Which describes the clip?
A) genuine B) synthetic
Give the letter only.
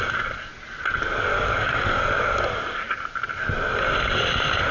A